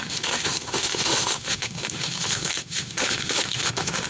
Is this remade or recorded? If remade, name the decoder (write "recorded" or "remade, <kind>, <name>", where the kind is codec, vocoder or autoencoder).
remade, autoencoder, DAC-VAE